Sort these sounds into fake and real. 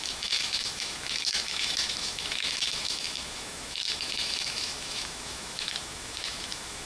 fake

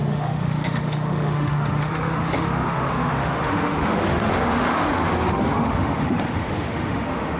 fake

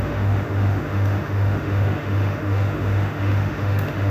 fake